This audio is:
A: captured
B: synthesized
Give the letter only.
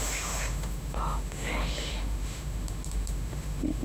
B